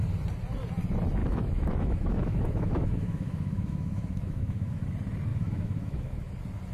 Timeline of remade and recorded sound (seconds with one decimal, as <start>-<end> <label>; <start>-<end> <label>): 0.0-1.2 recorded; 1.2-4.8 remade; 4.8-5.3 recorded; 5.3-6.3 remade; 6.3-6.7 recorded